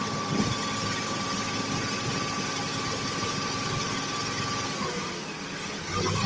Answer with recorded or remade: recorded